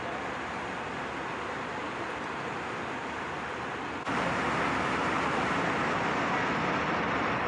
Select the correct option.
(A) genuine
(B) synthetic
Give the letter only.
A